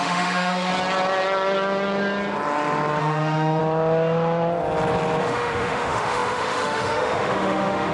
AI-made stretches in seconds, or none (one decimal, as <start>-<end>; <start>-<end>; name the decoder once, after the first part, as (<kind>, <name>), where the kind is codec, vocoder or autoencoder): 0.0-0.7 (autoencoder, DAC-VAE); 3.0-3.6; 5.2-7.9